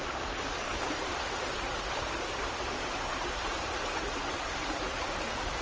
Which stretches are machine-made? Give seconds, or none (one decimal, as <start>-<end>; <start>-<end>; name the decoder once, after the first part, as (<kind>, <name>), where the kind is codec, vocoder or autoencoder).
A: none